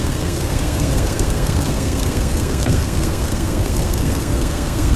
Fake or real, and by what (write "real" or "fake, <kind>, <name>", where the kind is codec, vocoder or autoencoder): fake, codec, SNAC